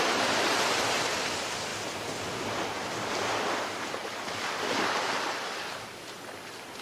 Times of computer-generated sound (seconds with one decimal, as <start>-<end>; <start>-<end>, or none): none